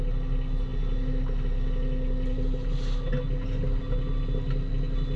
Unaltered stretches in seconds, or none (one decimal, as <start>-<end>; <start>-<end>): 0.0-5.2